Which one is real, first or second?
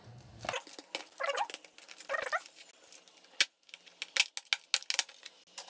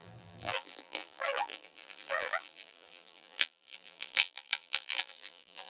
first